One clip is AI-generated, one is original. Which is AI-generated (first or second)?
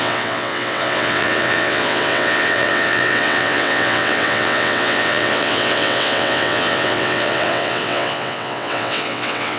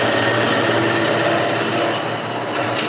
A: first